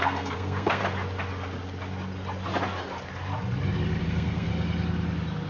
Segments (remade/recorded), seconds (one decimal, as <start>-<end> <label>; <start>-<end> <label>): 0.0-0.8 remade; 0.8-4.0 recorded; 4.0-4.5 remade; 4.5-5.5 recorded